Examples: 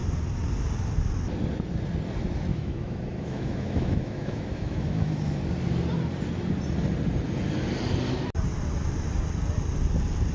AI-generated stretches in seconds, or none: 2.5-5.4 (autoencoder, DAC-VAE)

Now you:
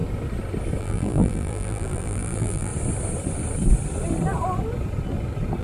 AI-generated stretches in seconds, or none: 0.8-2.7 (vocoder, BigVGAN v2)